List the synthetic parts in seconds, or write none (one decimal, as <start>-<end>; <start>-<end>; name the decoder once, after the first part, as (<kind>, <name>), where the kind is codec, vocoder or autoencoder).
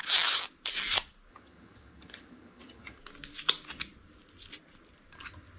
1.3-3.0 (vocoder, HiFi-GAN)